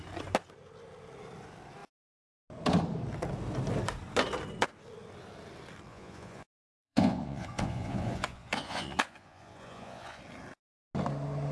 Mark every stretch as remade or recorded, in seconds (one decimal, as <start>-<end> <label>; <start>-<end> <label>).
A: 0.0-5.9 recorded; 5.9-10.2 remade; 10.2-11.5 recorded